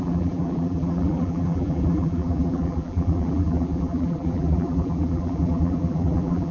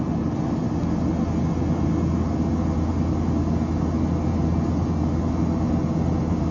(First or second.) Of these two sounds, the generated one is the first